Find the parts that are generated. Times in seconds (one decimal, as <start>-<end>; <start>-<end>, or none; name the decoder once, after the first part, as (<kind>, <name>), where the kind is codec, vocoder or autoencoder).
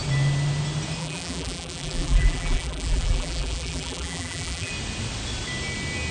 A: 1.0-4.7 (vocoder, BigVGAN v2)